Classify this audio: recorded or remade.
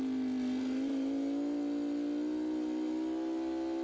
recorded